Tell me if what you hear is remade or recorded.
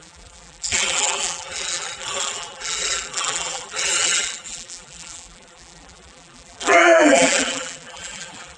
remade